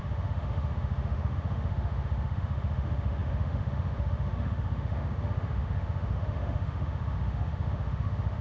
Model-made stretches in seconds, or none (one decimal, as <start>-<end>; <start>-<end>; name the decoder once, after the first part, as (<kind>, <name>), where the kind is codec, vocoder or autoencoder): 0.0-8.4 (autoencoder, DAC-VAE)

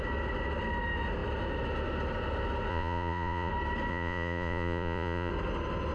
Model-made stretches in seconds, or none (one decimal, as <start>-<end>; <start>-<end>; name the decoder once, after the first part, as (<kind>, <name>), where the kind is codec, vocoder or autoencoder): 2.7-3.5 (vocoder, Vocos); 3.9-5.3

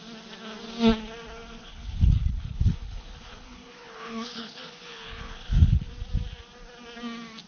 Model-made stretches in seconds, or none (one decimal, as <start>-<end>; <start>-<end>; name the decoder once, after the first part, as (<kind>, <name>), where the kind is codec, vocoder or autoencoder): 1.6-5.9 (codec, HILCodec)